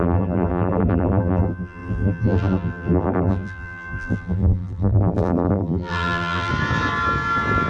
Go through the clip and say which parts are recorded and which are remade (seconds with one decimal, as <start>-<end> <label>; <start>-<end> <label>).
0.0-6.5 remade; 6.5-7.7 recorded